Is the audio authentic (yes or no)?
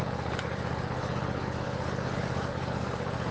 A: no